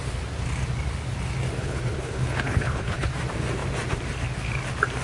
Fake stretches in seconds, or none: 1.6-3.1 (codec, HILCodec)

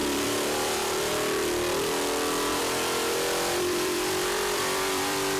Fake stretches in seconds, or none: 0.0-1.1 (vocoder, BigVGAN v2); 2.5-5.4

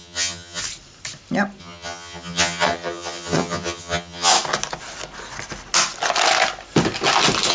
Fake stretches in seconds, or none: 0.0-0.6 (vocoder, HiFi-GAN); 1.6-4.3

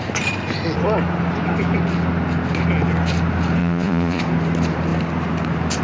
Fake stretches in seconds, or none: 3.6-4.2 (vocoder, Vocos)

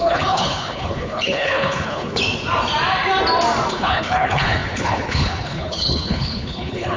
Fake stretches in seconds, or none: 0.0-2.2 (codec, HILCodec); 3.7-7.0